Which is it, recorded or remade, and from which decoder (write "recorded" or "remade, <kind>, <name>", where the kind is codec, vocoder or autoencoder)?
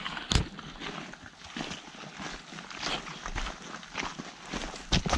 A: recorded